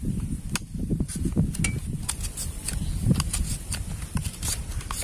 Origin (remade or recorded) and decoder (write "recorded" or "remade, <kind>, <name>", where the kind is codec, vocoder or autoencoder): recorded